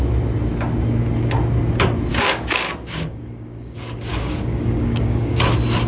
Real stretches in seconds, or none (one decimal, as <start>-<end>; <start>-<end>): 0.0-2.1; 5.4-5.9